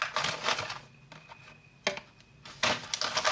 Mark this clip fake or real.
real